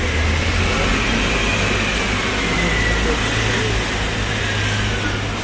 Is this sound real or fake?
real